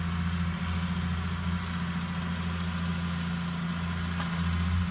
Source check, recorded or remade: recorded